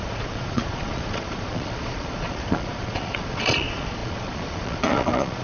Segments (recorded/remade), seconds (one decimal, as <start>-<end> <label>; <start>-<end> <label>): 0.0-5.4 remade